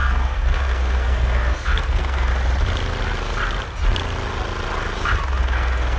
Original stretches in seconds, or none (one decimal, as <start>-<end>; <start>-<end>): 2.3-5.4